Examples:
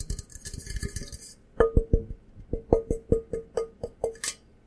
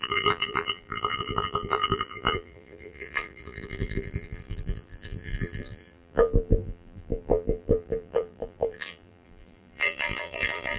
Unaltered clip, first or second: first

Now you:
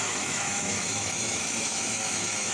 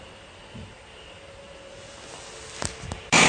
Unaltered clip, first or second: second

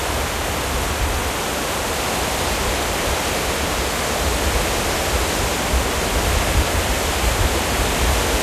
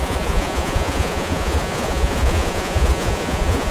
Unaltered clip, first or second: first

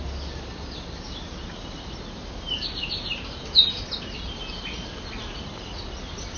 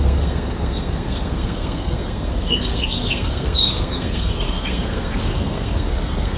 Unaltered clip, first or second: first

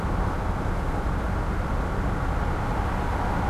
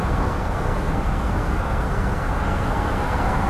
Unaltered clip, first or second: first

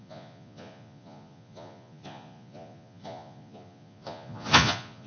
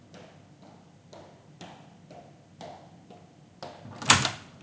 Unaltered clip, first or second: second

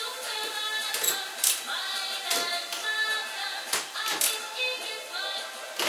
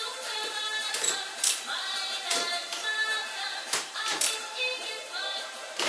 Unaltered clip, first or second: first